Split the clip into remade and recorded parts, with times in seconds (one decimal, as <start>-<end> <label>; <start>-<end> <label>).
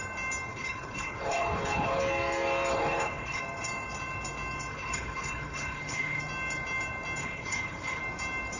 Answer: 0.0-0.5 recorded; 0.5-2.0 remade; 2.0-2.7 recorded; 2.7-3.4 remade; 3.4-4.7 recorded; 4.7-6.2 remade; 6.2-7.2 recorded; 7.2-8.0 remade; 8.0-8.6 recorded